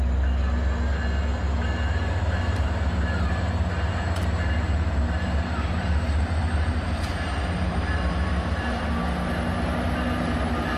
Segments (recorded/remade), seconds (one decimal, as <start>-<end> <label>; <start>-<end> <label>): 0.0-2.2 recorded; 2.2-4.1 remade; 4.1-4.6 recorded; 4.6-9.0 remade; 9.0-10.8 recorded